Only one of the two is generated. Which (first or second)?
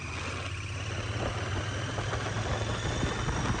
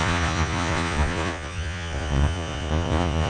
second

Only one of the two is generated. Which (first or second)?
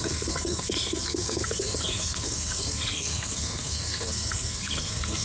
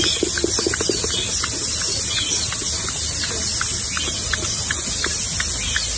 first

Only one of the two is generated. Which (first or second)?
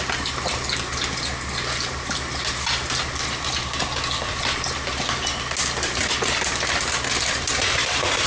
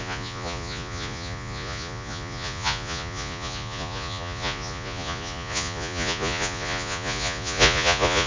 second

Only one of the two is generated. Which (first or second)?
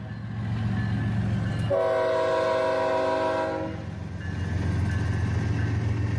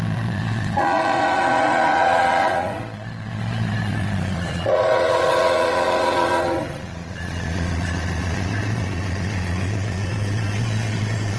second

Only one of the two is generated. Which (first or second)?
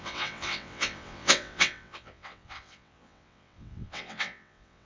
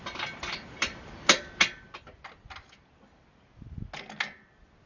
first